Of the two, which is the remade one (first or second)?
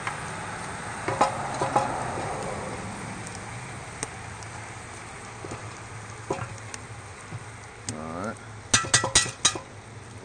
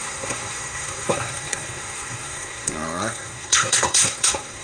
second